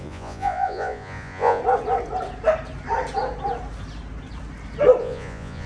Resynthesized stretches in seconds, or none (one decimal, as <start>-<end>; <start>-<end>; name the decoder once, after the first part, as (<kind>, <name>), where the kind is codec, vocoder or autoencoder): 0.0-1.6 (vocoder, Vocos); 5.0-5.7